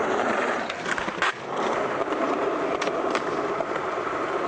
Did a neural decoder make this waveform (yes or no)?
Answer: yes